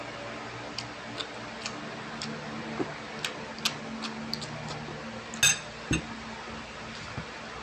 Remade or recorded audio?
recorded